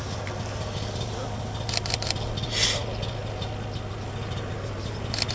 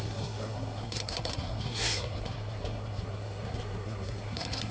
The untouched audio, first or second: first